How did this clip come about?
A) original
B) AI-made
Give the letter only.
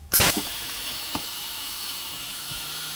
B